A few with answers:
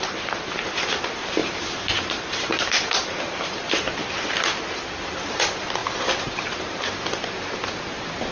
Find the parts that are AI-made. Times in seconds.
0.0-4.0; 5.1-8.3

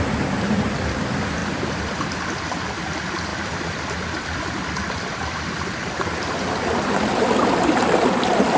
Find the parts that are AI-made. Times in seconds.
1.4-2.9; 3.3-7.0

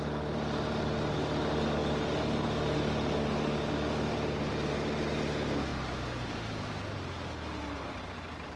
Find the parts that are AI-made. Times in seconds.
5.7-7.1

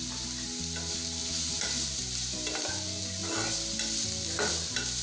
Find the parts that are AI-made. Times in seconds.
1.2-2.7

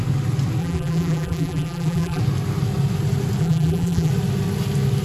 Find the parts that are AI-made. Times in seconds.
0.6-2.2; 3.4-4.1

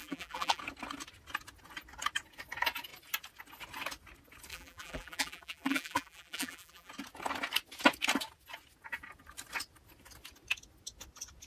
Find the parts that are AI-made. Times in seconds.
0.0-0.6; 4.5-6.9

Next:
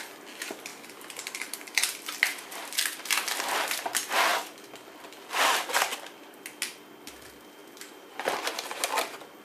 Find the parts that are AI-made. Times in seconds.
0.7-3.0; 7.6-8.1

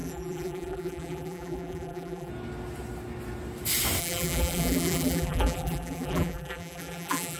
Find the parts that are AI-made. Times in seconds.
0.0-2.3; 4.0-7.4